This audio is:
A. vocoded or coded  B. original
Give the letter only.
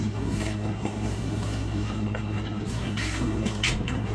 A